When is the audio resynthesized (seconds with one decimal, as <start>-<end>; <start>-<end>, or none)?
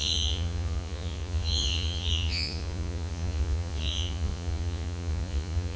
0.0-5.8